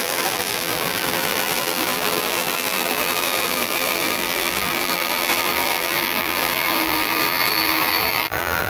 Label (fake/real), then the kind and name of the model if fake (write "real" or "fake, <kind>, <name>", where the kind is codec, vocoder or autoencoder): fake, vocoder, BigVGAN v2